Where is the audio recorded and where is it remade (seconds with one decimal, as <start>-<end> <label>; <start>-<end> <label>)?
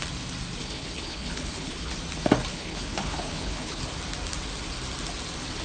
0.0-0.6 recorded; 0.6-1.9 remade; 1.9-2.5 recorded; 2.5-3.8 remade; 3.8-5.6 recorded